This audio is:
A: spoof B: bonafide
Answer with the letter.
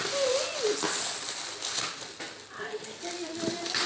A